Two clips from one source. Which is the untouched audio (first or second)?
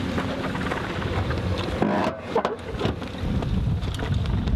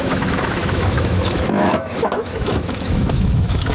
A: first